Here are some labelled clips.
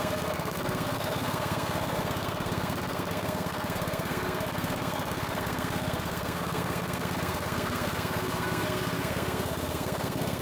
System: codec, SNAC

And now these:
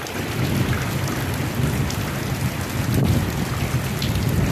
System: none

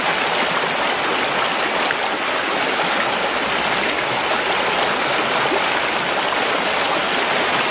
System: none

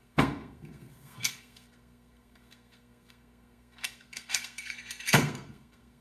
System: codec, SNAC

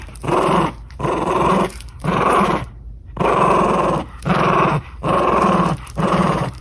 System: vocoder, BigVGAN v2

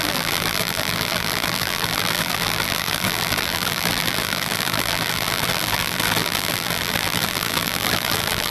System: vocoder, BigVGAN v2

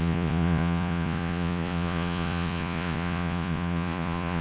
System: vocoder, Vocos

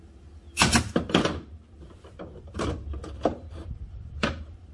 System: vocoder, BigVGAN v2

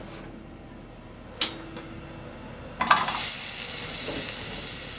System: none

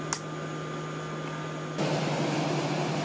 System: none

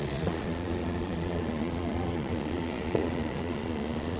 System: vocoder, Vocos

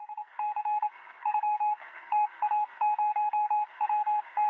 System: codec, SNAC